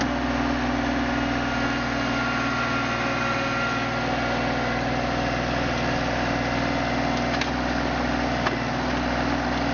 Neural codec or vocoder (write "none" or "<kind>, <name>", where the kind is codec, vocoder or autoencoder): none